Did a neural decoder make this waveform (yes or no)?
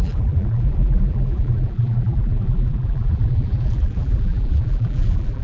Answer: yes